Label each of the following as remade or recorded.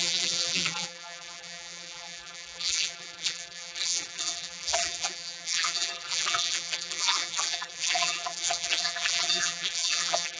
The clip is remade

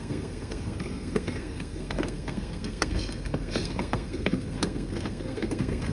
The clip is remade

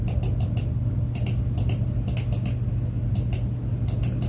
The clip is recorded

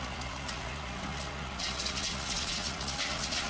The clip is remade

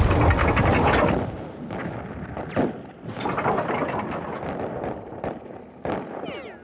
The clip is recorded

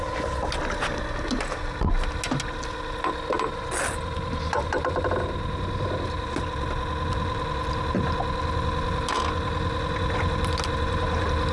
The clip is recorded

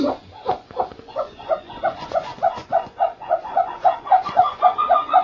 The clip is remade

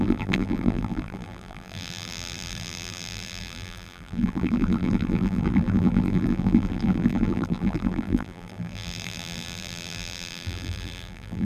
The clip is remade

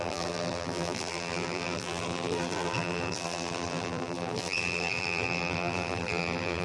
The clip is remade